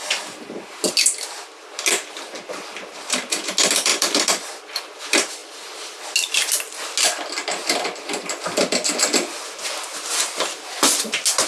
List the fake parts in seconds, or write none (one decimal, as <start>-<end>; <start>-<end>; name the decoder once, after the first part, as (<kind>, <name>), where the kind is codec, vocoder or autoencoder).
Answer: none